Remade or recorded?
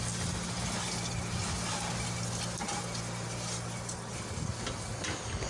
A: recorded